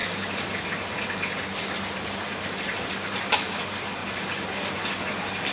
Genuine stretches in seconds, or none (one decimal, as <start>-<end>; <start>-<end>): 0.0-5.5